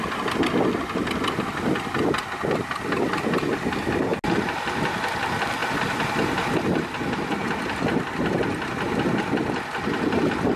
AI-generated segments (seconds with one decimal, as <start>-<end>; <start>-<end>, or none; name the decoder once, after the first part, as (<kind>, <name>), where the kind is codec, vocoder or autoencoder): none